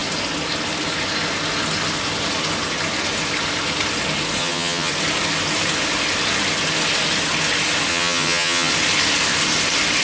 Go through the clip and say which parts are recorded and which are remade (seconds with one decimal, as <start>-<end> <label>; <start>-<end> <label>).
0.0-4.4 recorded; 4.4-4.9 remade; 4.9-7.9 recorded; 7.9-8.7 remade; 8.7-10.0 recorded